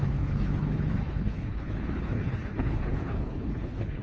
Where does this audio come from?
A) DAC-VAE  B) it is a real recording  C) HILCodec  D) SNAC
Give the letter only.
C